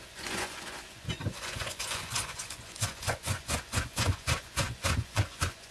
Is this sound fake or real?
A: fake